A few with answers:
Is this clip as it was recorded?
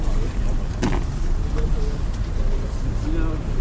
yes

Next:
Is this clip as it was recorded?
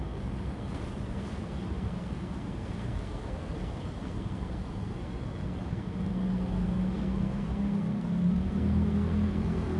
no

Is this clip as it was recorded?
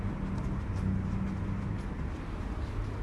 yes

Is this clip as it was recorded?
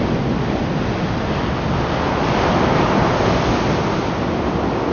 yes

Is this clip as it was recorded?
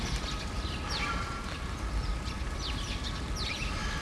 no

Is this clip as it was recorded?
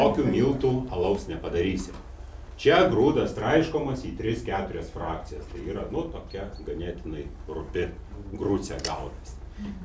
yes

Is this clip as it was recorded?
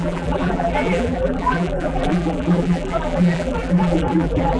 no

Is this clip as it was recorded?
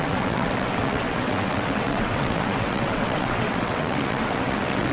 no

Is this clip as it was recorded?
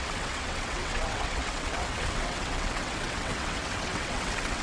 no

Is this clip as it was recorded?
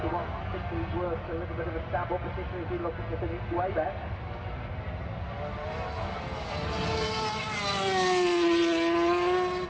yes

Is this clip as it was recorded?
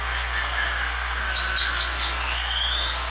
no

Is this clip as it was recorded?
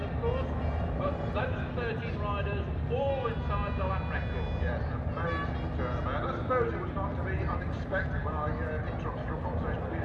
yes